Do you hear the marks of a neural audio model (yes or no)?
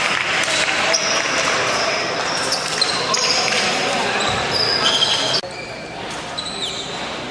no